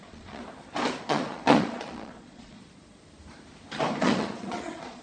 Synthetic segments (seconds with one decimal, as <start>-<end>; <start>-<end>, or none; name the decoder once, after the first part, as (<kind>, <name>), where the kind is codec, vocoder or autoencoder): 0.0-0.4 (vocoder, Vocos); 1.0-2.6; 4.0-5.0